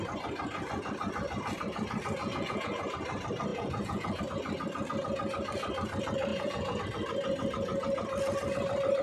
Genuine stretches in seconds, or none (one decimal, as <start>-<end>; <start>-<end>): 0.0-2.2; 2.9-3.5; 4.2-6.3; 6.8-9.0